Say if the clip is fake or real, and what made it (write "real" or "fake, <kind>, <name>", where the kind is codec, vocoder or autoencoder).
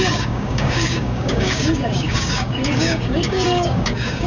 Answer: fake, codec, DAC